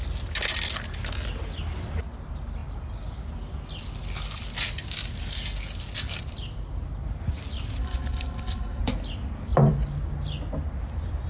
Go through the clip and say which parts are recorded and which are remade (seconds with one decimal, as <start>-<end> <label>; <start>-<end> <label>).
0.0-7.8 recorded; 7.8-8.8 remade; 8.8-11.3 recorded